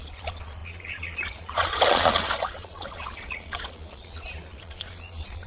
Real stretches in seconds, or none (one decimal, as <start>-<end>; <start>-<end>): none